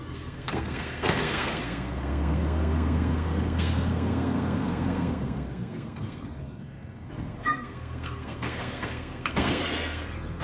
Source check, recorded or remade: remade